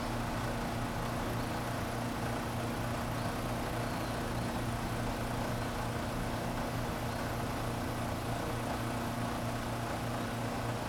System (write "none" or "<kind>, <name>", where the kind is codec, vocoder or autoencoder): none